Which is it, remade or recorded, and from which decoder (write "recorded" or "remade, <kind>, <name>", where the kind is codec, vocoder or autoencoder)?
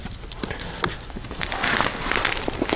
recorded